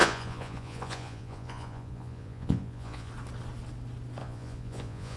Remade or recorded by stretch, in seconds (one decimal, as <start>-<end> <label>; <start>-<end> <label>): 0.0-3.1 remade; 3.1-4.2 recorded; 4.2-5.2 remade